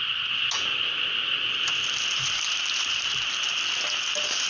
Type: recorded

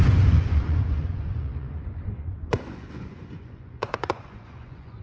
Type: remade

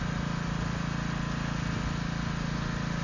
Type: recorded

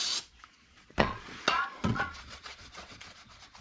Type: remade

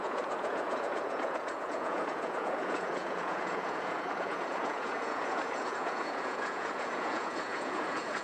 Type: remade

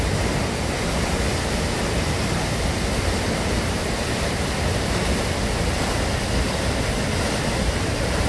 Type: recorded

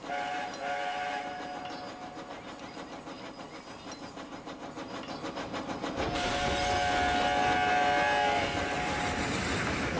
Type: recorded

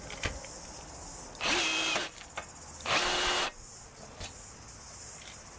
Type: recorded